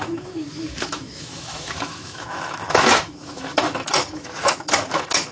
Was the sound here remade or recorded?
remade